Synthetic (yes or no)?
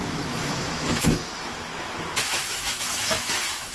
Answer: yes